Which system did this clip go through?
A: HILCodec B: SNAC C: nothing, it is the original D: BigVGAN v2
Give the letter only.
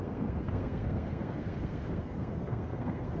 B